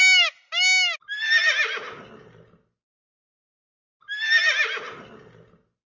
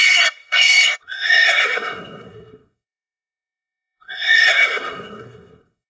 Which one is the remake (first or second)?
second